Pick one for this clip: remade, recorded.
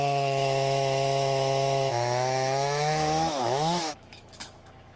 remade